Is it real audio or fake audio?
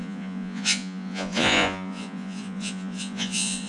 fake